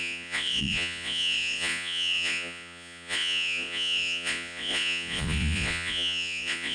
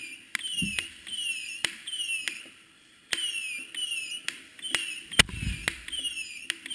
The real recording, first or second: second